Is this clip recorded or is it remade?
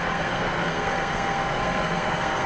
remade